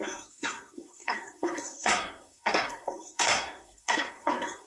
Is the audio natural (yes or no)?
no